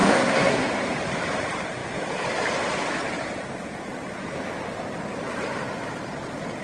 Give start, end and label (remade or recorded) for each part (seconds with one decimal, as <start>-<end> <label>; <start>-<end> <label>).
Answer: 0.0-0.7 remade; 0.7-6.6 recorded